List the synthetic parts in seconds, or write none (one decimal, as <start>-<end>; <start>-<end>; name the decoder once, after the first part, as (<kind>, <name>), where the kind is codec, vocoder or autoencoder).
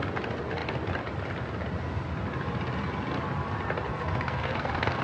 3.9-5.0 (codec, SNAC)